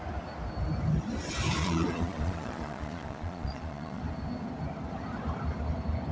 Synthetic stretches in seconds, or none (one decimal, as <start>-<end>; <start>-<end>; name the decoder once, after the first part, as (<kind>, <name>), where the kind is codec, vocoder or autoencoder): 1.6-4.0 (vocoder, Vocos)